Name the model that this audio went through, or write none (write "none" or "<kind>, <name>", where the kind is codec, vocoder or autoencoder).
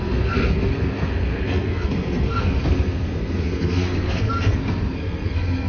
codec, SNAC